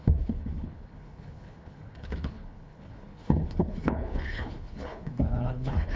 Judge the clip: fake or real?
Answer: fake